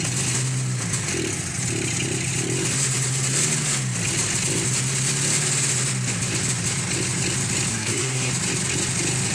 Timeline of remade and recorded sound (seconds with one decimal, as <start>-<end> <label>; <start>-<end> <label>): 0.0-7.7 recorded; 7.7-8.3 remade; 8.3-9.3 recorded